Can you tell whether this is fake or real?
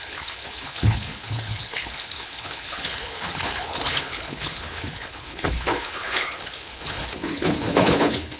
fake